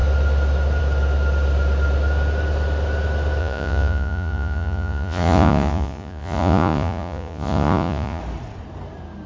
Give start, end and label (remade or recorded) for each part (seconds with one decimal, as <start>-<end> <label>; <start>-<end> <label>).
0.0-3.4 recorded; 3.4-8.2 remade; 8.2-9.3 recorded